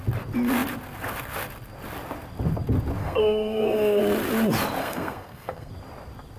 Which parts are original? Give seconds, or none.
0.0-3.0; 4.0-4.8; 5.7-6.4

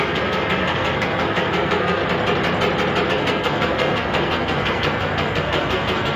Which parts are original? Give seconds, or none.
2.0-3.1

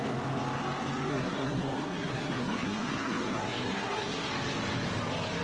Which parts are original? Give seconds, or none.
0.0-1.1; 4.3-5.4